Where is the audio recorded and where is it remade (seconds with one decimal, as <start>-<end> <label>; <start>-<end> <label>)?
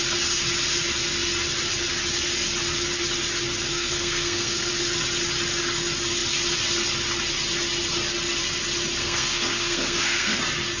0.0-3.7 recorded; 3.7-4.7 remade; 4.7-9.0 recorded; 9.0-10.4 remade; 10.4-10.8 recorded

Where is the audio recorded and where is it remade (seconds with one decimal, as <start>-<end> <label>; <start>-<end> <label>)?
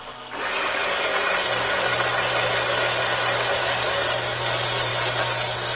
0.0-5.8 recorded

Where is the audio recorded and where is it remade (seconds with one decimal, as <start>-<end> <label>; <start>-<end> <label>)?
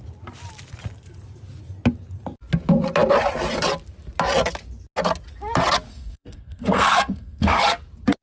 0.0-5.9 recorded; 5.9-7.6 remade; 7.6-8.2 recorded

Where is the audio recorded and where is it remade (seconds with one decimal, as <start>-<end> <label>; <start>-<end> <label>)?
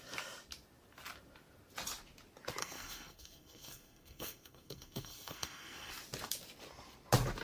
0.0-2.6 recorded; 2.6-5.9 remade; 5.9-7.4 recorded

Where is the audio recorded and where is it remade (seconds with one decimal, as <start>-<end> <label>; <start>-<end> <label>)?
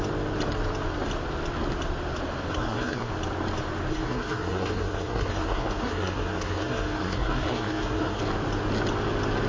0.0-2.5 recorded; 2.5-3.1 remade; 3.1-3.9 recorded; 3.9-8.2 remade; 8.2-9.5 recorded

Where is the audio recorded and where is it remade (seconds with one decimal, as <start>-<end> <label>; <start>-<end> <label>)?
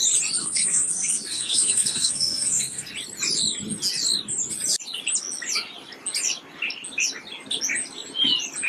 0.0-0.4 recorded; 0.4-2.9 remade; 2.9-8.7 recorded